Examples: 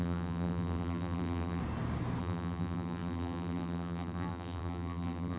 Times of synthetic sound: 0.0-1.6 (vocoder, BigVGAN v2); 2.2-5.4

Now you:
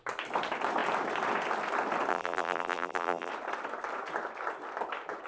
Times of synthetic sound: 2.1-3.3 (vocoder, BigVGAN v2)

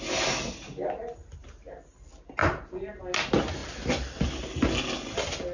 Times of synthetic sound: 2.4-3.0 (vocoder, BigVGAN v2); 3.6-4.2

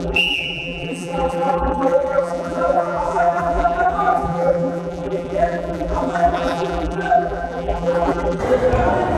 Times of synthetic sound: 0.0-8.4 (vocoder, BigVGAN v2)

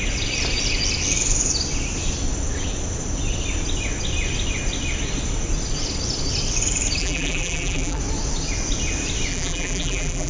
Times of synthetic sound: 7.0-8.0 (vocoder, BigVGAN v2); 9.3-10.3

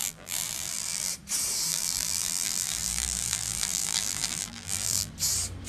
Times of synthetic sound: 0.0-1.1 (vocoder, BigVGAN v2); 1.7-5.1

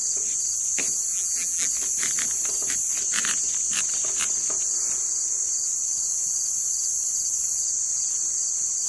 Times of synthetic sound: 1.1-1.7 (vocoder, BigVGAN v2)